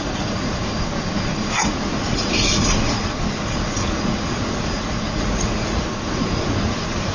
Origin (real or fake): fake